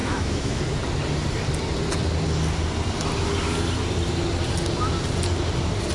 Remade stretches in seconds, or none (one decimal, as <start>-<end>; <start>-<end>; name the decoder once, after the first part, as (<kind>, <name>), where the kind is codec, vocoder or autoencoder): 0.0-0.6 (autoencoder, DAC-VAE)